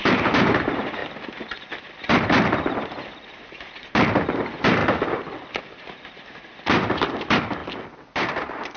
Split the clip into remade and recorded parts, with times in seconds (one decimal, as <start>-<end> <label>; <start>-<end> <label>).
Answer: 0.0-1.0 remade; 1.0-2.0 recorded; 2.0-4.8 remade; 4.8-5.6 recorded; 5.6-7.6 remade; 7.6-8.8 recorded

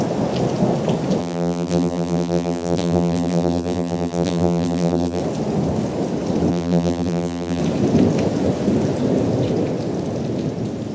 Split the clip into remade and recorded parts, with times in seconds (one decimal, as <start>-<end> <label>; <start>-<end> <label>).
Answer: 0.0-1.2 recorded; 1.2-5.2 remade; 5.2-6.5 recorded; 6.5-7.6 remade; 7.6-10.9 recorded